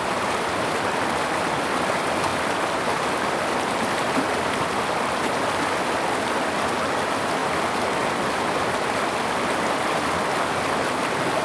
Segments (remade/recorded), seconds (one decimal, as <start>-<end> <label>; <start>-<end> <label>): 0.0-11.4 recorded